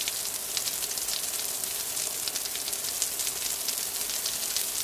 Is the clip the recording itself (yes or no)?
yes